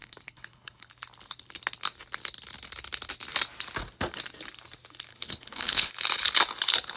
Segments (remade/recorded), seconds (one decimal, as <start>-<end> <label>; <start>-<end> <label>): 0.0-0.9 remade; 0.9-5.1 recorded; 5.1-5.9 remade; 5.9-7.0 recorded